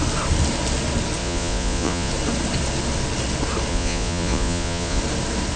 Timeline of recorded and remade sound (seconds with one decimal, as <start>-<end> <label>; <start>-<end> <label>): 0.0-1.2 recorded; 1.2-2.1 remade; 2.1-3.7 recorded; 3.7-5.0 remade; 5.0-5.6 recorded